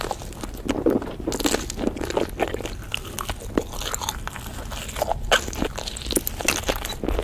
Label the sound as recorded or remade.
recorded